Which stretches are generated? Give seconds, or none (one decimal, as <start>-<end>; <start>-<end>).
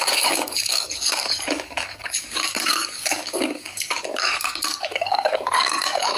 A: 0.0-6.2